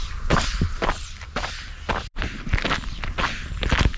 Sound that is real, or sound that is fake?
real